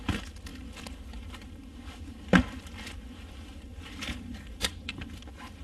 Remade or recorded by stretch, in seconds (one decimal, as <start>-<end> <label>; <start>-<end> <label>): 0.0-3.7 recorded; 3.7-5.1 remade; 5.1-5.6 recorded